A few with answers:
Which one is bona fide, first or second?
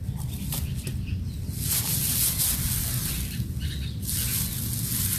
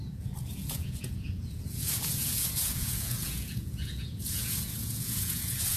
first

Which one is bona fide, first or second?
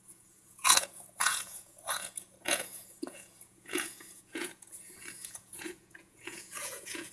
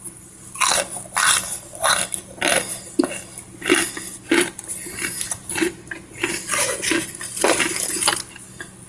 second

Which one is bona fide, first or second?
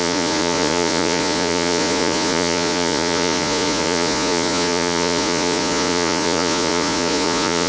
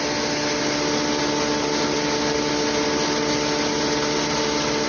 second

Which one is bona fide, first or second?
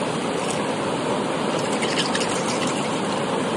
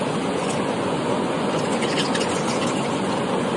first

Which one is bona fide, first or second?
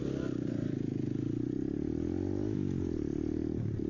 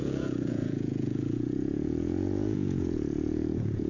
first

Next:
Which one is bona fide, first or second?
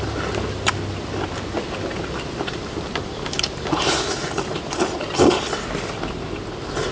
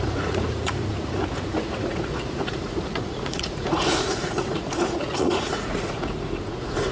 first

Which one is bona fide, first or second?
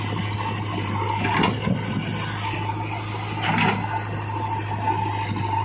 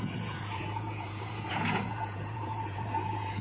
first